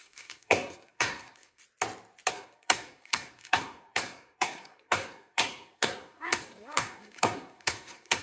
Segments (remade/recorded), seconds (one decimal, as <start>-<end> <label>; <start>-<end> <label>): 0.0-1.6 remade; 1.6-2.3 recorded; 2.3-8.2 remade